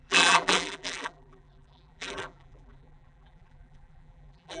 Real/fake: fake